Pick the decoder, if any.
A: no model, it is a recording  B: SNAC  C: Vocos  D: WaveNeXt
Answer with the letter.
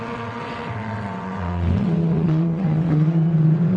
D